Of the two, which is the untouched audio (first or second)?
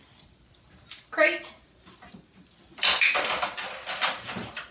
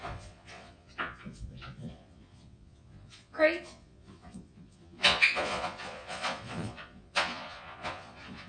first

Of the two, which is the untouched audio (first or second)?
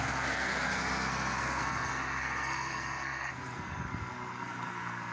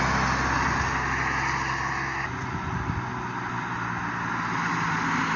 second